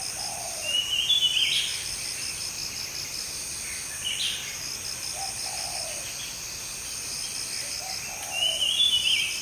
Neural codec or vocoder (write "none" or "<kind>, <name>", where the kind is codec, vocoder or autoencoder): none